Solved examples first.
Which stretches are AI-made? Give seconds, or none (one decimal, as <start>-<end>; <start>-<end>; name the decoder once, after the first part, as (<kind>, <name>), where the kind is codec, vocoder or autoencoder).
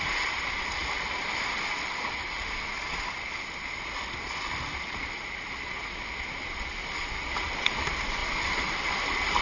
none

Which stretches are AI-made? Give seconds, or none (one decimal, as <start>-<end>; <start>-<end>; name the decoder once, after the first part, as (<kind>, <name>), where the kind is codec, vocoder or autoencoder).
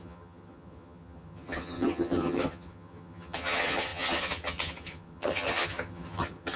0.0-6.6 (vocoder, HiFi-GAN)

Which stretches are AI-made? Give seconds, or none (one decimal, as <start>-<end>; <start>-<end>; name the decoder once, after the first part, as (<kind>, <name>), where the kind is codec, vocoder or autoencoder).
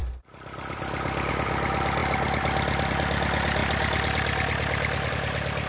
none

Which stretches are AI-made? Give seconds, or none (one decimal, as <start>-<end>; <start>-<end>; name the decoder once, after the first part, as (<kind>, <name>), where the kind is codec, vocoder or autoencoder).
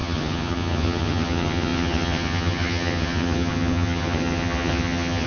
0.0-5.3 (vocoder, HiFi-GAN)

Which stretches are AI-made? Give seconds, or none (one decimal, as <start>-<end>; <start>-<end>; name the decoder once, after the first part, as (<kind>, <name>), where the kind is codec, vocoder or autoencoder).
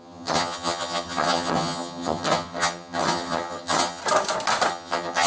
0.0-4.0 (vocoder, HiFi-GAN); 4.7-5.3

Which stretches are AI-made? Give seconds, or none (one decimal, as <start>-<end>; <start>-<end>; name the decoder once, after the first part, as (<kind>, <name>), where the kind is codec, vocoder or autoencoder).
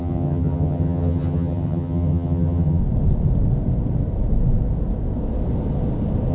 0.0-2.8 (vocoder, HiFi-GAN)